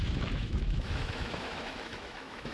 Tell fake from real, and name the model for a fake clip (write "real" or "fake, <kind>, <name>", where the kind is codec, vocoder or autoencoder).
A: fake, autoencoder, DAC-VAE